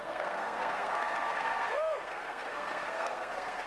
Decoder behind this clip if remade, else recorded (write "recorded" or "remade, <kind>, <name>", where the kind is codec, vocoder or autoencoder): remade, codec, SNAC